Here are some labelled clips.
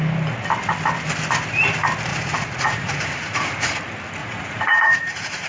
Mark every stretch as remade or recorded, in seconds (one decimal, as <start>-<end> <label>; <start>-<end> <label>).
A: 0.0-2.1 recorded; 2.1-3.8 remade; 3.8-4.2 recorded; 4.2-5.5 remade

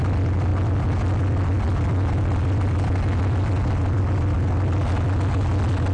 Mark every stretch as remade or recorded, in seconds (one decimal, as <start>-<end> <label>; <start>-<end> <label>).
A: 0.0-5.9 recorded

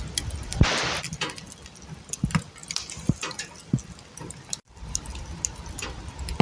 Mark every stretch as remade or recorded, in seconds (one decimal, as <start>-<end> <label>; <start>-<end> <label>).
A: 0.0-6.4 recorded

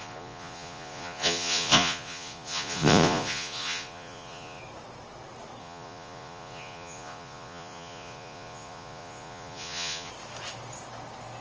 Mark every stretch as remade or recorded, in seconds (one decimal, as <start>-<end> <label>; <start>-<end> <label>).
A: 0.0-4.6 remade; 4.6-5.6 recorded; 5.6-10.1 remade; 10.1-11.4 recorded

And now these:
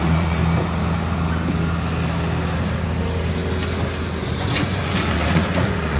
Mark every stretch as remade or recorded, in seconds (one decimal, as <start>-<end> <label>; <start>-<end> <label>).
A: 0.0-0.4 remade; 0.4-4.0 recorded; 4.0-6.0 remade